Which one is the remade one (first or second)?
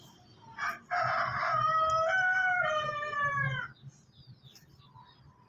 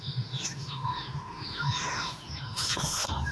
second